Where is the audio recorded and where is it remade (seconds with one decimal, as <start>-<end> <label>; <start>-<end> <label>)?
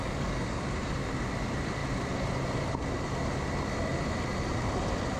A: 0.0-0.6 remade; 0.6-5.2 recorded